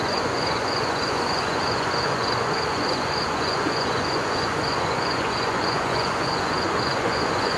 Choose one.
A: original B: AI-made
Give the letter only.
B